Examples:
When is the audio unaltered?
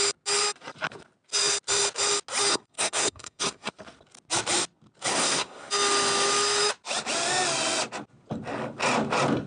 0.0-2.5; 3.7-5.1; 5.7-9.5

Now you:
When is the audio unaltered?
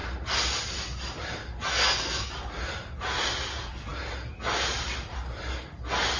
0.0-1.7; 2.3-6.2